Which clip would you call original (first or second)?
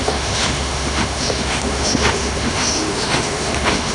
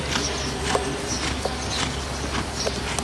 second